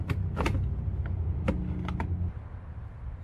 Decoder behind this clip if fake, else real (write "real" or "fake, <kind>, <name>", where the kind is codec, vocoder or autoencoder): real